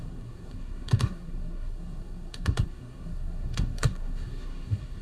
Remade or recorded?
remade